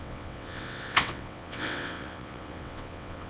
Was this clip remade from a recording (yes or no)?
yes